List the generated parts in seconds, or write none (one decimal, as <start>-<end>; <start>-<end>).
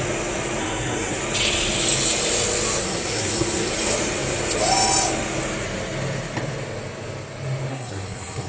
0.6-1.2; 2.8-3.7; 7.7-8.5